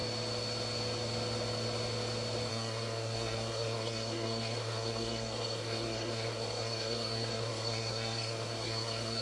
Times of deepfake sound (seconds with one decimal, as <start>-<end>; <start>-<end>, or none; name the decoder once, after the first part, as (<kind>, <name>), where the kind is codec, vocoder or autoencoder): 2.5-9.2 (codec, SNAC)